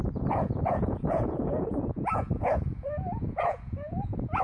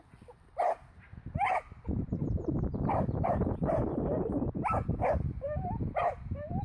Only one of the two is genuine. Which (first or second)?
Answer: second